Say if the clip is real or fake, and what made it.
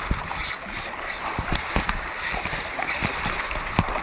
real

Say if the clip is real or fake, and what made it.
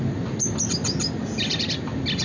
real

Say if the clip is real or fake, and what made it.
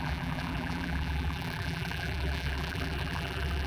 fake, vocoder, BigVGAN v2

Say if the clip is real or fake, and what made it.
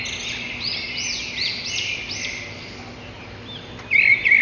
real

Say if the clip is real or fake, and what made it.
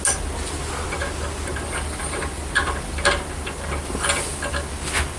real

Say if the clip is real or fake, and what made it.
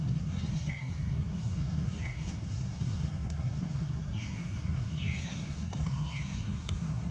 fake, codec, SNAC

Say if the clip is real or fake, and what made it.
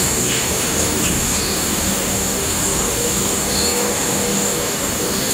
fake, codec, DAC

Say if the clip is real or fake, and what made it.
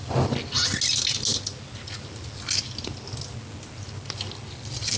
real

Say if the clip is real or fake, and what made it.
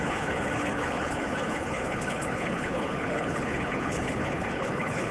fake, codec, HILCodec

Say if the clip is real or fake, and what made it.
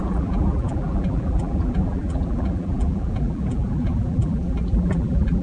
fake, vocoder, BigVGAN v2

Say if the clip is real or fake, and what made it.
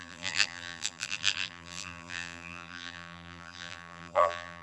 fake, vocoder, BigVGAN v2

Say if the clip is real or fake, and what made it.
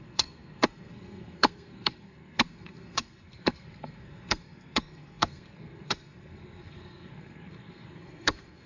fake, codec, SNAC